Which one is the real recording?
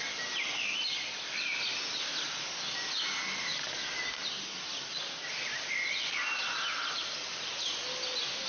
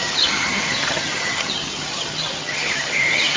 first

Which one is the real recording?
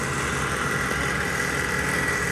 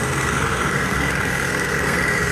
first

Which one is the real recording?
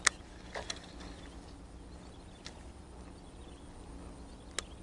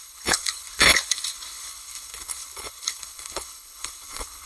first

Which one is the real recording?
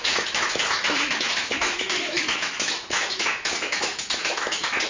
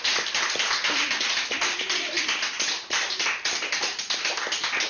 second